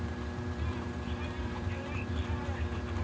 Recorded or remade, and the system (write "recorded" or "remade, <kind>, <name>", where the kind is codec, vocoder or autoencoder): remade, vocoder, BigVGAN v2